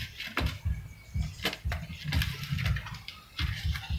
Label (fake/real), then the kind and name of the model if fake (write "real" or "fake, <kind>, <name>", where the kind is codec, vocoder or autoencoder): real